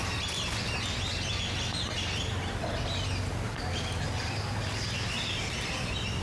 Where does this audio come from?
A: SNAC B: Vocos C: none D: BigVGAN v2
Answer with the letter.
C